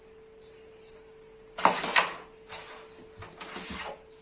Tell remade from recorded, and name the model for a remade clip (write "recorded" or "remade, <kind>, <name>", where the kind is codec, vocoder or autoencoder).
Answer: recorded